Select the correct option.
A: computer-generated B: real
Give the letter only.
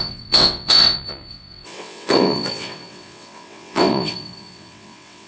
A